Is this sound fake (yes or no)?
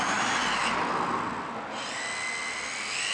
no